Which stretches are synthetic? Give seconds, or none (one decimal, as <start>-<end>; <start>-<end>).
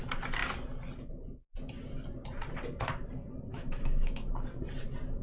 3.5-4.3